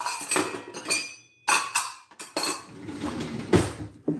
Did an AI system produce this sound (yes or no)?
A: no